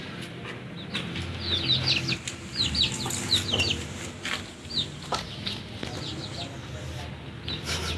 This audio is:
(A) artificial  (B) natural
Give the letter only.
B